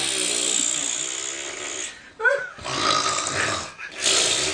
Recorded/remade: recorded